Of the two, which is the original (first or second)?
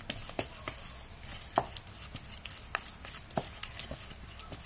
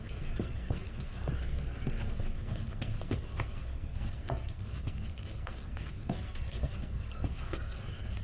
first